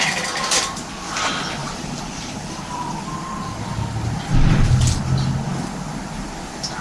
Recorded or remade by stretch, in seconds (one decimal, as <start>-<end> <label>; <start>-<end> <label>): 0.0-1.6 recorded; 1.6-3.0 remade; 3.0-4.3 recorded; 4.3-5.0 remade; 5.0-6.8 recorded